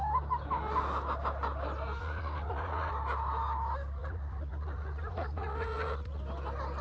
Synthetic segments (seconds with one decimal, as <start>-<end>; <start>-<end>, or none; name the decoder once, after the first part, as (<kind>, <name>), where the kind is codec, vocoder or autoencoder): 2.0-2.9 (vocoder, Vocos); 4.0-6.2